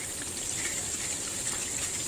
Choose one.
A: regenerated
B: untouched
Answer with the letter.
A